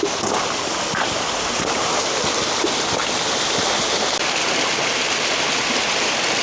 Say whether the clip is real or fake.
real